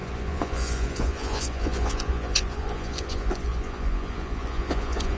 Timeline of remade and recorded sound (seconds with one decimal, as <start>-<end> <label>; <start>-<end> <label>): 0.0-5.2 remade